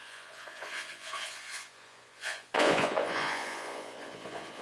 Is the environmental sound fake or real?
fake